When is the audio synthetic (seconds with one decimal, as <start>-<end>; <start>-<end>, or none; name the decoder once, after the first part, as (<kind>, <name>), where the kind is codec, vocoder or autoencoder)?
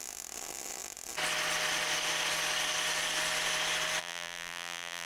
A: 4.0-5.1 (vocoder, BigVGAN v2)